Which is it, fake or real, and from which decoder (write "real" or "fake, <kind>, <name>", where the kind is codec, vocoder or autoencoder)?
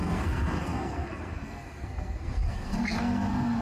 fake, codec, SNAC